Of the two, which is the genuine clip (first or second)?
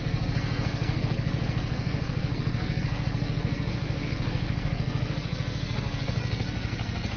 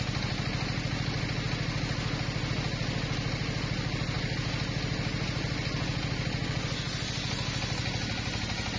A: second